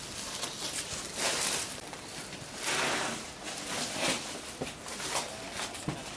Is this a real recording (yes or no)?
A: yes